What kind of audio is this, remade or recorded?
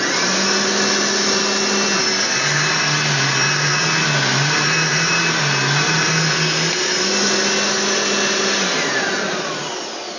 recorded